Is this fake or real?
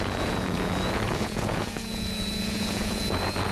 fake